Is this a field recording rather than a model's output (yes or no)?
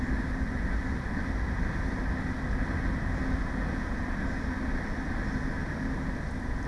yes